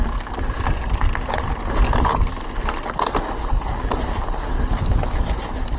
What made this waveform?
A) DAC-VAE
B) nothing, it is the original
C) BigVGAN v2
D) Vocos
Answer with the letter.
B